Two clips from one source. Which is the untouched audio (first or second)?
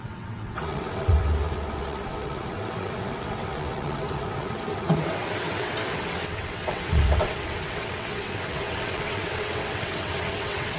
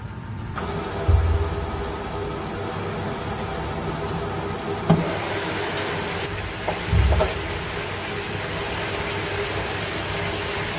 second